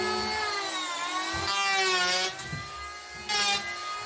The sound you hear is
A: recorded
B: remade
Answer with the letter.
A